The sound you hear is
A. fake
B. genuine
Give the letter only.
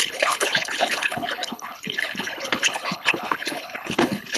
A